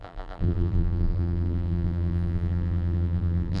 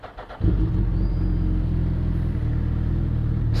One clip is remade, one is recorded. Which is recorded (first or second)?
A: second